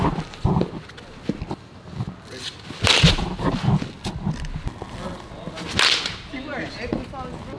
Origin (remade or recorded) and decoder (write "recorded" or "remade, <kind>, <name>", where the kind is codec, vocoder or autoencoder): recorded